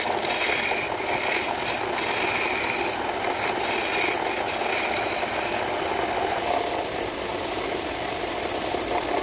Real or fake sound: real